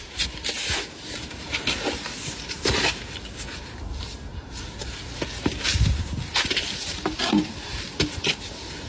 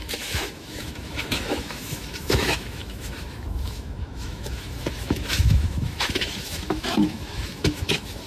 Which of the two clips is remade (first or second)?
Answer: second